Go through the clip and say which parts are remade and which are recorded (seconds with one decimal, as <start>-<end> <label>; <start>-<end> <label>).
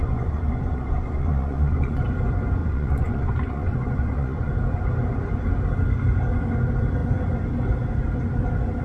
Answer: 0.0-2.0 remade; 2.0-2.6 recorded; 2.6-4.5 remade; 4.5-8.8 recorded